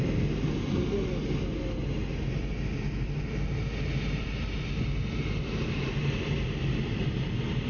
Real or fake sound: real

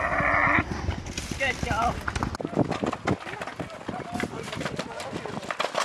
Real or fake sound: real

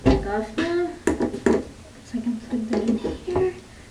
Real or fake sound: real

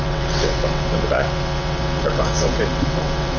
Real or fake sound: fake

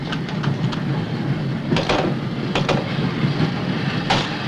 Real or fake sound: real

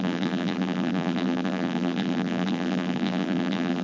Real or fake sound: fake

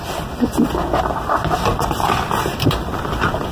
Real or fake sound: real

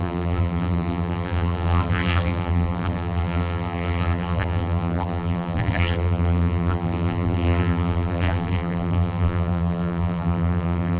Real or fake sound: fake